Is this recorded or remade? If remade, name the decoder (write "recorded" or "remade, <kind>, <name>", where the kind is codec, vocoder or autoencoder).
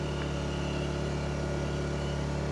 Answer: recorded